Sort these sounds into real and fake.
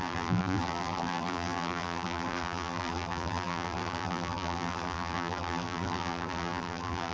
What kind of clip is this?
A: fake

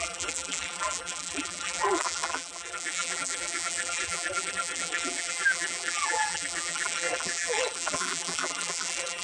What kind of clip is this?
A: fake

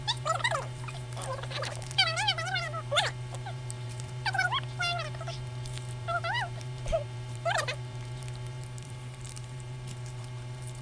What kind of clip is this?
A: fake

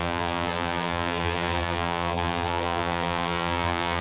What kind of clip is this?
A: fake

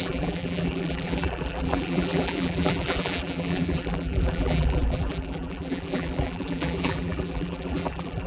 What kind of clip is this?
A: fake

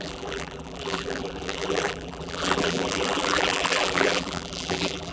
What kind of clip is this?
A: fake